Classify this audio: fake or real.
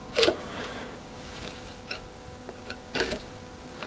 fake